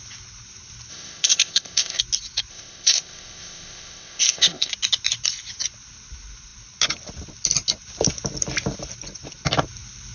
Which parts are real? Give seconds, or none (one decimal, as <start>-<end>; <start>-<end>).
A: 0.0-0.9; 2.0-2.5; 4.7-10.1